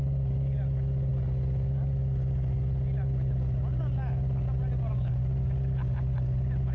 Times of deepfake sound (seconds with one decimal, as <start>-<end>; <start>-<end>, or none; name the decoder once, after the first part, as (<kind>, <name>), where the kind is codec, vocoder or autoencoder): 0.0-6.7 (vocoder, BigVGAN v2)